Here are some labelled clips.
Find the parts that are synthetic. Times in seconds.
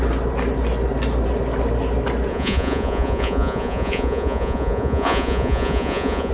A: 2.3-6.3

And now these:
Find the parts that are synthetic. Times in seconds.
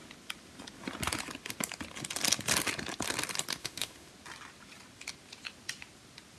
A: 3.6-4.1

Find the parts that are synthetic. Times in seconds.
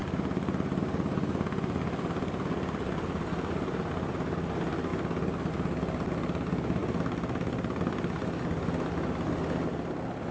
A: none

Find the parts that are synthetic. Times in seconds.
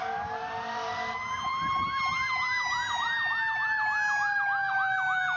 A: none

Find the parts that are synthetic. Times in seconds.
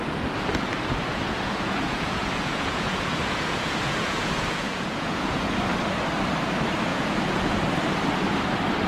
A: 1.1-5.6; 6.9-7.6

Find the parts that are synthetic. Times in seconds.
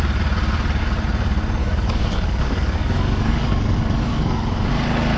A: 1.6-4.7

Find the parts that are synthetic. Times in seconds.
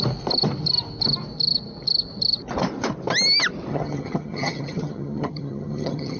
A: 3.7-6.2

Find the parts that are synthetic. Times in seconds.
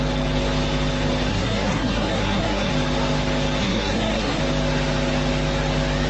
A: 1.3-2.7; 3.6-4.4